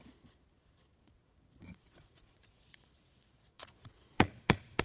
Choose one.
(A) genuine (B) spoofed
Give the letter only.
B